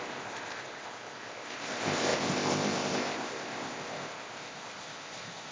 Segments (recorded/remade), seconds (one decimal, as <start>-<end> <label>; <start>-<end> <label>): 0.0-5.5 remade